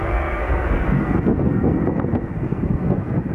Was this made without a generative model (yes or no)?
no